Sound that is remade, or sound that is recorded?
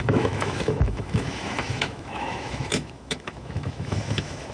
remade